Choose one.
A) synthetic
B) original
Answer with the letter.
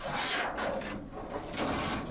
B